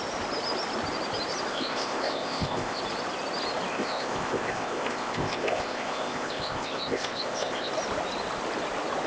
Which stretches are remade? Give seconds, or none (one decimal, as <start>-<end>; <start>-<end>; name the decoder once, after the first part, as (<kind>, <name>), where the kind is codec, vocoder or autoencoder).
1.5-2.8 (codec, ZipCodec); 3.7-7.7